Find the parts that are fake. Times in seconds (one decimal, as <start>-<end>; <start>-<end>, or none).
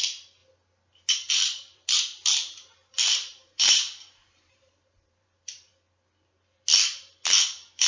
0.0-0.4; 1.3-5.7; 7.5-7.9